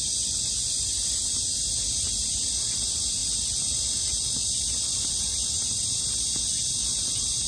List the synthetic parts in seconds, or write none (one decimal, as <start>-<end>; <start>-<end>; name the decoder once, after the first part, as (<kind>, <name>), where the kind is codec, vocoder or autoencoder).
none